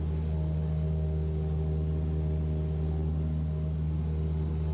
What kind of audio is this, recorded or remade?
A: recorded